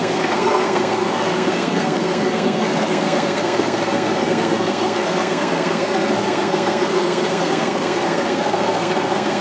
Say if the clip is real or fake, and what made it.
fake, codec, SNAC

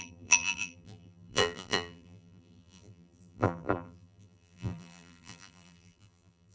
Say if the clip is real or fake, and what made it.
fake, vocoder, BigVGAN v2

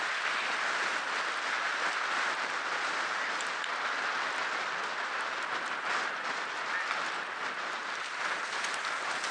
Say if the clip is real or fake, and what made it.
real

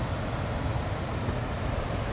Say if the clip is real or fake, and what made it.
real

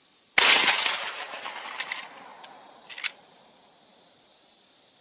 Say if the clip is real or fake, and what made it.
real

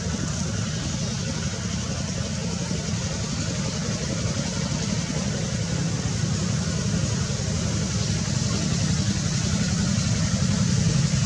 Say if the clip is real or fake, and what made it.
real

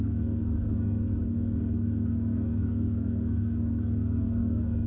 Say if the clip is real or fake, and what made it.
fake, codec, SNAC